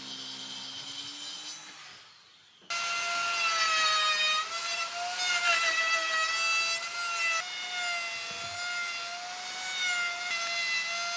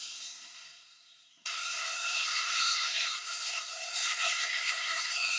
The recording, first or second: first